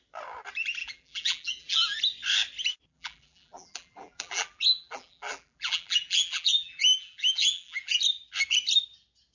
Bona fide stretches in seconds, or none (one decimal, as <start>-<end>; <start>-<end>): 0.0-0.8; 2.0-2.9; 8.0-9.3